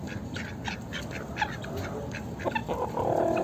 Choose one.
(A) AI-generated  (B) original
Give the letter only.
B